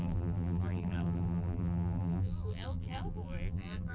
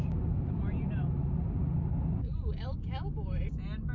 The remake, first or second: first